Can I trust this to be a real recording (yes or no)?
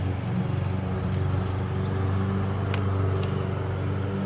yes